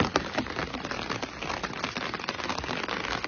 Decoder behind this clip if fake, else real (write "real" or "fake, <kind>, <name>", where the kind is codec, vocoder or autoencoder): real